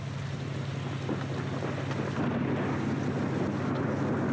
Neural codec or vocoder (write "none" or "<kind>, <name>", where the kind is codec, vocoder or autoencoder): none